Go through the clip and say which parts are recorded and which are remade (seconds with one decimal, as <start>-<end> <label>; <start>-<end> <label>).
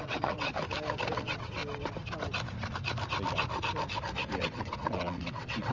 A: 0.0-0.5 remade; 0.5-1.1 recorded; 1.1-1.6 remade; 1.6-4.4 recorded; 4.4-5.7 remade